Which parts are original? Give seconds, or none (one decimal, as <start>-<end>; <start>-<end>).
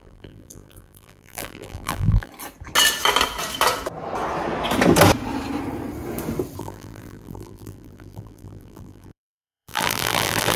2.3-6.6